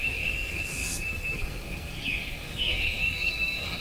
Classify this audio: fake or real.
fake